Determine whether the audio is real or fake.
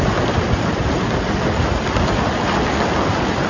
real